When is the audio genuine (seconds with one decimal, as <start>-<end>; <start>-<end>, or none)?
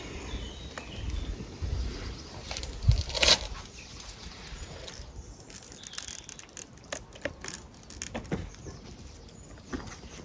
0.0-1.7; 2.9-10.2